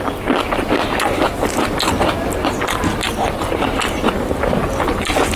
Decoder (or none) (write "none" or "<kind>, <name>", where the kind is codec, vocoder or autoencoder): none